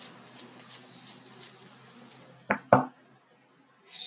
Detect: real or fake real